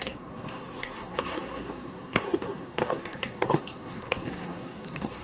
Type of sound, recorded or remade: remade